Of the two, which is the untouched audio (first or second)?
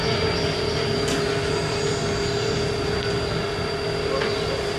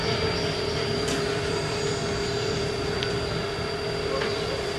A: first